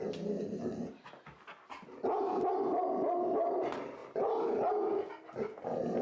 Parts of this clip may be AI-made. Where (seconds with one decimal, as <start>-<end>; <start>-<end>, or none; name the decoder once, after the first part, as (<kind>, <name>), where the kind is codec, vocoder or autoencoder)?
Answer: none